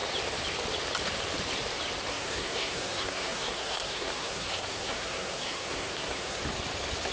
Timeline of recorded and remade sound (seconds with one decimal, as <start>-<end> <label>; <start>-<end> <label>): 0.0-2.1 recorded; 2.1-6.4 remade; 6.4-7.1 recorded